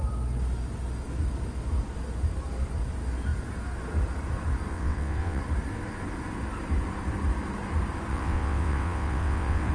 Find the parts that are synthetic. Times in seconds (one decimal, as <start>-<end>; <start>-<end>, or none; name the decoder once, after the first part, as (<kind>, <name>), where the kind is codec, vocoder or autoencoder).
4.7-5.4 (vocoder, WaveNeXt); 8.1-9.7